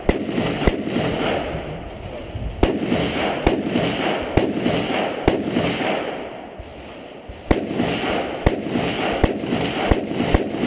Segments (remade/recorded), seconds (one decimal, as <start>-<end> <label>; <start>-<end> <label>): 0.0-10.7 recorded